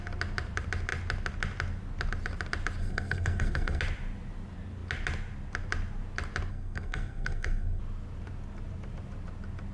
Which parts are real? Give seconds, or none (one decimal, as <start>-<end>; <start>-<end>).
0.0-2.8; 3.8-6.5; 7.8-9.7